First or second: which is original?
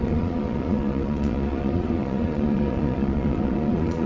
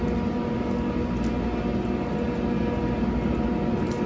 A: second